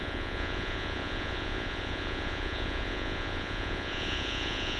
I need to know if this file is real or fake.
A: fake